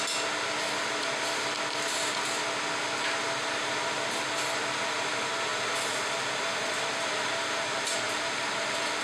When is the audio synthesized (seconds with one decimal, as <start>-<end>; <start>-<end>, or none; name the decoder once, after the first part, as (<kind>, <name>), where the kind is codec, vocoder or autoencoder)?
none

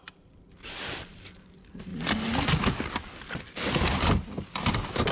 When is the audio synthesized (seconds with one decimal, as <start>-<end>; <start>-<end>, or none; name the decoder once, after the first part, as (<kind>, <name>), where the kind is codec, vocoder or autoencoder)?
none

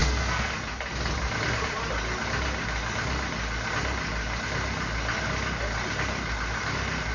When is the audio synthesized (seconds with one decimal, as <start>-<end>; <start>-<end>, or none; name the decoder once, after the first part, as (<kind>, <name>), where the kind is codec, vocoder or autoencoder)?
0.0-0.5 (codec, SNAC)

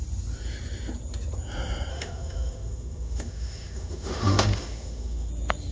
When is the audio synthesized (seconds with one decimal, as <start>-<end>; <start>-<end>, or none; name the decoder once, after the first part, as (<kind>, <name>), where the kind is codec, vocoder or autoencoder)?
1.9-5.3 (autoencoder, DAC-VAE)

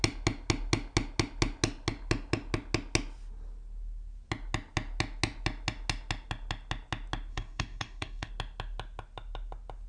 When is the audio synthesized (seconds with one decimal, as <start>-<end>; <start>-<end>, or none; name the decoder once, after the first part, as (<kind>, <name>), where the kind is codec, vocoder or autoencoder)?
7.3-8.3 (codec, DAC)